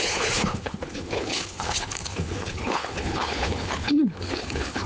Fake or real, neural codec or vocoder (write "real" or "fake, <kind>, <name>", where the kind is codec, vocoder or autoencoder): fake, codec, HILCodec